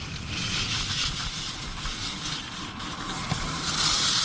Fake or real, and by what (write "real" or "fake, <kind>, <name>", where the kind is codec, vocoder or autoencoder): real